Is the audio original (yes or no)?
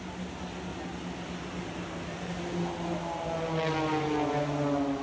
yes